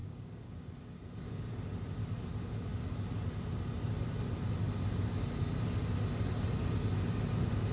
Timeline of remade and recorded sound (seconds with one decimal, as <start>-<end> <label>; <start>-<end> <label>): 0.0-0.7 remade; 0.7-7.7 recorded